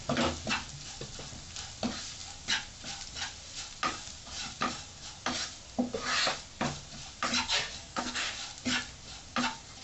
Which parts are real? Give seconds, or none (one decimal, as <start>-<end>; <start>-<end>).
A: 0.0-7.8; 8.3-9.8